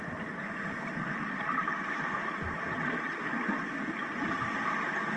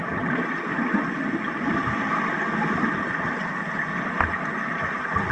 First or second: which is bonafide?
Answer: first